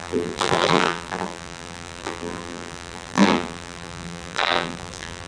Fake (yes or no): yes